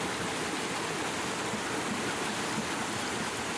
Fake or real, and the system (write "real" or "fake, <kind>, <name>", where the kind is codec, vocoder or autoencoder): real